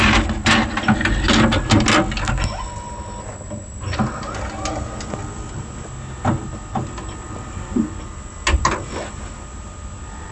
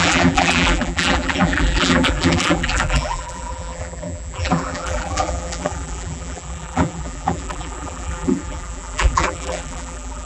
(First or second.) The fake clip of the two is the second